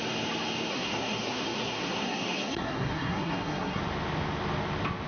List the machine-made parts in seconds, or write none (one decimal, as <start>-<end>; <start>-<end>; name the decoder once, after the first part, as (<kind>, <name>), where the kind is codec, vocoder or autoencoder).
0.7-3.8 (codec, SNAC)